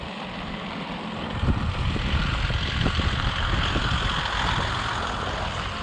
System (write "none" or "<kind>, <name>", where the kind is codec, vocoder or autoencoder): none